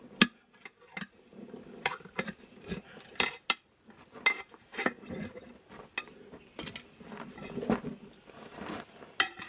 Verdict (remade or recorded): recorded